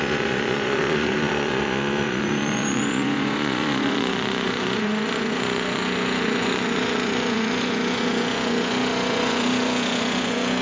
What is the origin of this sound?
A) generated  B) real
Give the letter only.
A